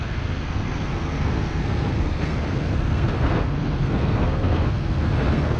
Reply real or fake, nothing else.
fake